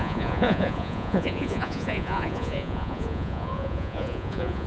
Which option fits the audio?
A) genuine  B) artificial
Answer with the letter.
B